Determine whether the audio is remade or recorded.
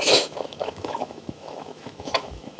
remade